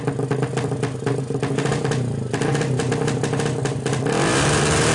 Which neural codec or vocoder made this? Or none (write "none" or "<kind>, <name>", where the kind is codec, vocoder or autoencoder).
none